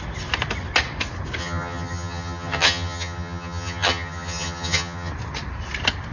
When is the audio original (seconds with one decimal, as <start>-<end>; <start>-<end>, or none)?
0.0-1.4; 5.1-6.1